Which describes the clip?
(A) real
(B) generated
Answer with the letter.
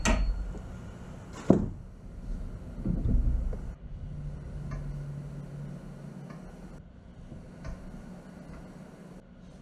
A